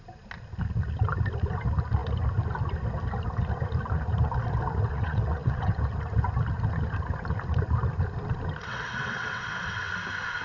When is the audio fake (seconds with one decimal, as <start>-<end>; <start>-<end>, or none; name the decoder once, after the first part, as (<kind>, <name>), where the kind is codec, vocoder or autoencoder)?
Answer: 4.9-5.7 (vocoder, WaveNeXt); 8.6-9.9